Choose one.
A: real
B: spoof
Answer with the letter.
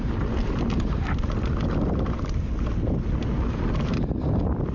A